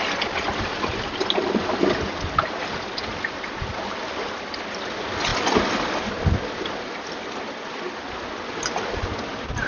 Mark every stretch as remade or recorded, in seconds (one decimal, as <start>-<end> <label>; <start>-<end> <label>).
0.0-9.7 recorded